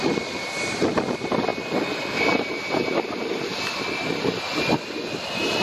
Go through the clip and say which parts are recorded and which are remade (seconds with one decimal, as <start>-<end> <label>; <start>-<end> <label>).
0.0-5.6 recorded